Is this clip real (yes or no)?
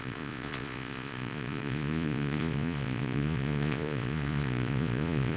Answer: no